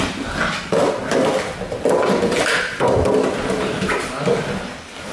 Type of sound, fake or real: real